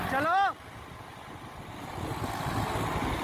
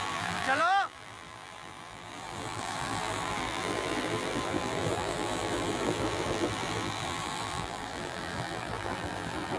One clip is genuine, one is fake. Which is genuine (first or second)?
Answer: first